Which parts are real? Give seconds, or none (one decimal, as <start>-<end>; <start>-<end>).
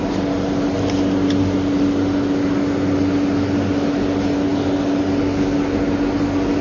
0.0-6.6